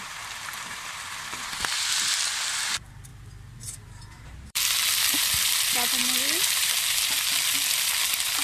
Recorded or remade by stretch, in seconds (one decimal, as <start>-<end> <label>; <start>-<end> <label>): 0.0-8.4 remade